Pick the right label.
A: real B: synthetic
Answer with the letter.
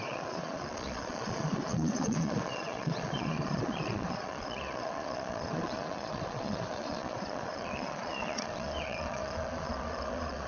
B